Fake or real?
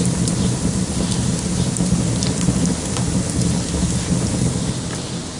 real